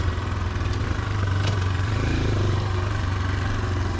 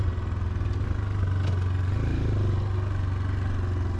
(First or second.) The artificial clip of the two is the first